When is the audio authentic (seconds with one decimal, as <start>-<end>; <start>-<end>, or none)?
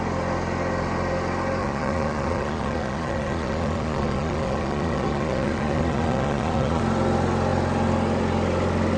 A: 0.0-1.6; 6.8-9.0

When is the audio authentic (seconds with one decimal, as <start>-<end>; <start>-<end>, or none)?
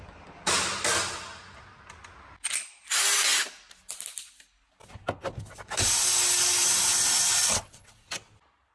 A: 0.0-7.4; 7.9-8.7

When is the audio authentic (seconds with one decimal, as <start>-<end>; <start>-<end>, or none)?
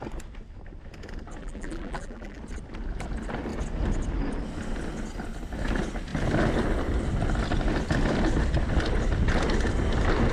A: 0.0-1.4; 2.4-10.3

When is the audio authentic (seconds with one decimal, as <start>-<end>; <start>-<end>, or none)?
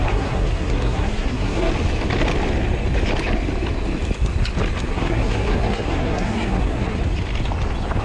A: 1.7-4.9; 7.0-8.0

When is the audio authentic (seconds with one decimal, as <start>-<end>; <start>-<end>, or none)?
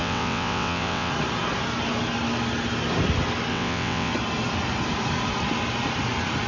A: 1.1-3.5; 4.1-6.5